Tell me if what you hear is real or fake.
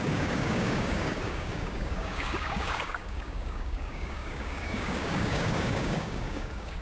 fake